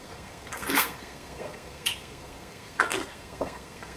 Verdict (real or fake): fake